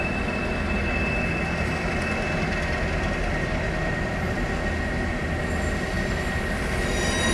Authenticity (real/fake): real